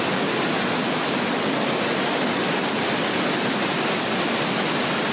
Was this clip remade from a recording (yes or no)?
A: no